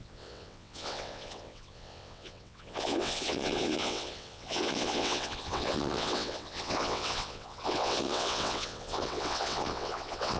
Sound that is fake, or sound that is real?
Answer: fake